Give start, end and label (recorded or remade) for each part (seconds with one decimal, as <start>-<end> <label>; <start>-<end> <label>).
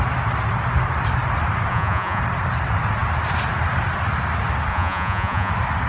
0.0-1.7 recorded; 1.7-2.2 remade; 2.2-4.7 recorded; 4.7-5.5 remade; 5.5-5.9 recorded